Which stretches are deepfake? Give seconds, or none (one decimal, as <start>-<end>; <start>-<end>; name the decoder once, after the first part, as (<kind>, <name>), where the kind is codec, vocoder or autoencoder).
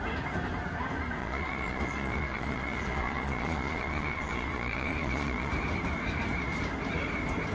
1.2-5.5 (vocoder, Vocos)